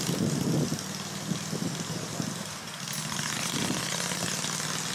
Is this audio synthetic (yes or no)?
no